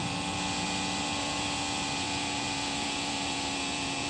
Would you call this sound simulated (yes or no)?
yes